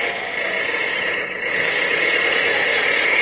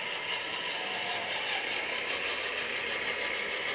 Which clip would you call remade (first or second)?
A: first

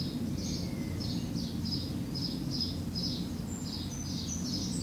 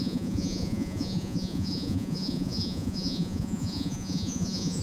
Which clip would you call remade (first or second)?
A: second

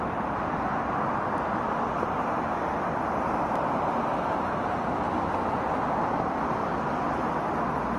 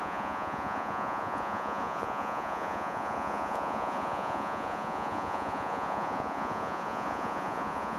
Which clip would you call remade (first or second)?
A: second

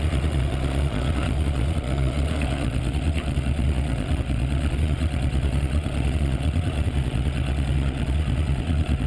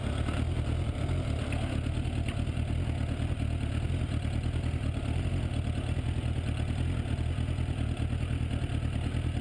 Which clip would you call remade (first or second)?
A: first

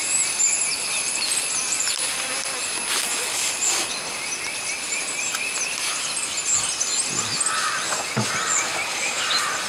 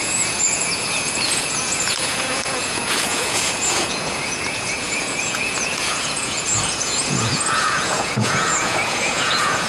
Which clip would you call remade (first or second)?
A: second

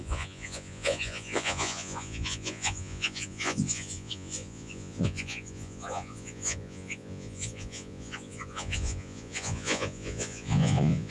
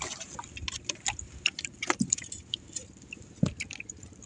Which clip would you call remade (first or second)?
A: first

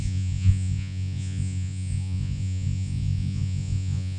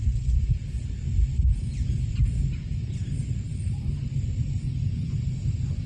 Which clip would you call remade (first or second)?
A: first